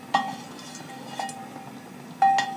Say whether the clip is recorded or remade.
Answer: recorded